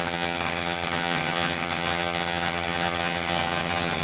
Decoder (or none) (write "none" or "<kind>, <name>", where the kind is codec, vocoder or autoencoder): vocoder, HiFi-GAN